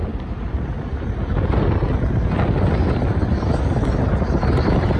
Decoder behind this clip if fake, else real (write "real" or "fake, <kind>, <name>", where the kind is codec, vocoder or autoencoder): real